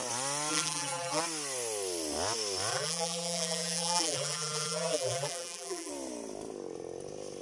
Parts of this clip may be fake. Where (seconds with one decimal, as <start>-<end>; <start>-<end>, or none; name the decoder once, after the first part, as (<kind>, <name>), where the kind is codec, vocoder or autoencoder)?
0.5-1.2 (vocoder, BigVGAN v2); 2.7-5.9

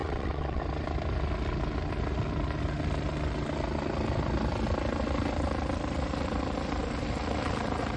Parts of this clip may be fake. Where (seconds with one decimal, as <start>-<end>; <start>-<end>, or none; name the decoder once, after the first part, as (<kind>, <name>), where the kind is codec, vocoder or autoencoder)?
0.0-0.6 (vocoder, WaveNeXt)

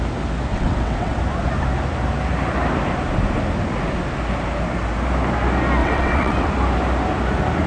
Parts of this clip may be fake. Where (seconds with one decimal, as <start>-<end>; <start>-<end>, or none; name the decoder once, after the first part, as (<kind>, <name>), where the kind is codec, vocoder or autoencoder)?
0.5-1.2 (vocoder, WaveNeXt); 5.8-6.5

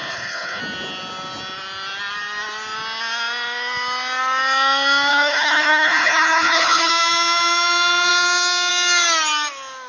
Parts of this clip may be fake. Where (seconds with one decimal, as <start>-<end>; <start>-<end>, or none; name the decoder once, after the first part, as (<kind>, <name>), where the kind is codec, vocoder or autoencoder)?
0.0-0.6 (codec, HILCodec); 5.1-6.9